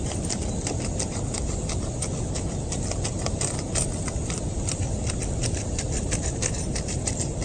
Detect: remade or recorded remade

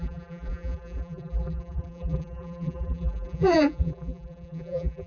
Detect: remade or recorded remade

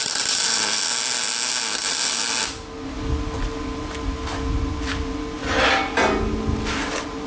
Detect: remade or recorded recorded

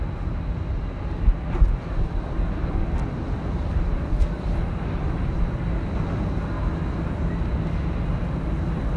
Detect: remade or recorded recorded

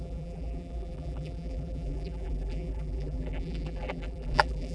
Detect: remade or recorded remade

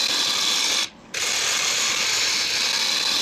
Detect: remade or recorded recorded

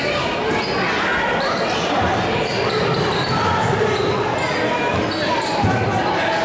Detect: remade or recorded recorded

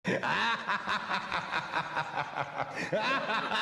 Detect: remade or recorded recorded